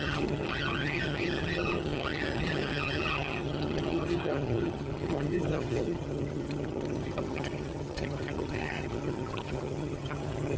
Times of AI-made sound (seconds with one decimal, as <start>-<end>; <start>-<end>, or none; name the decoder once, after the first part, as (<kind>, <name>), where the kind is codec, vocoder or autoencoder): 0.0-10.6 (vocoder, HiFi-GAN)